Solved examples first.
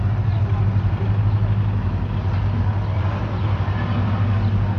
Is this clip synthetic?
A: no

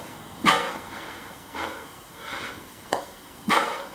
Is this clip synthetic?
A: yes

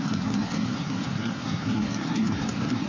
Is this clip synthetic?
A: yes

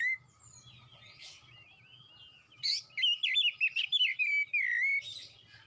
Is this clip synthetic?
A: no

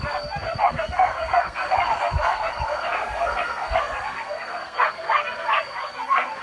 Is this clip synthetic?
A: yes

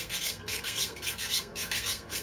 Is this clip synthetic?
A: yes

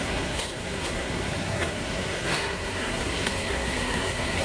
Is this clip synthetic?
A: yes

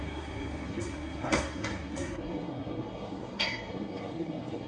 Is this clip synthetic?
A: yes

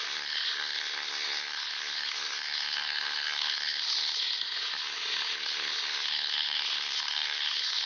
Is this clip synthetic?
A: yes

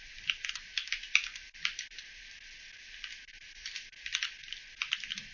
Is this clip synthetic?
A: no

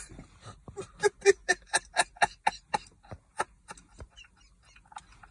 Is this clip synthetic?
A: no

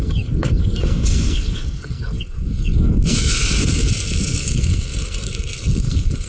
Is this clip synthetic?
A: yes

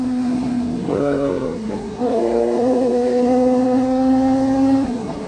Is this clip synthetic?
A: yes